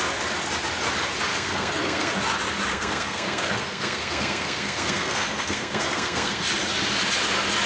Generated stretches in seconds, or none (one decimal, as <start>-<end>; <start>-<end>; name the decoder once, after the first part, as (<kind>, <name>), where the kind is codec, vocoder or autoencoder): 1.3-2.1 (codec, SNAC); 2.7-6.4

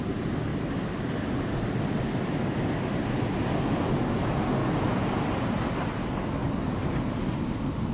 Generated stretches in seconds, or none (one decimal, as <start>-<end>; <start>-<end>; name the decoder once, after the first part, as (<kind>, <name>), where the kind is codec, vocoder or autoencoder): none